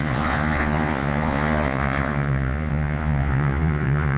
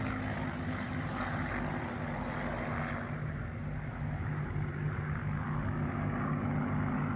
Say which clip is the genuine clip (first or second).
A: second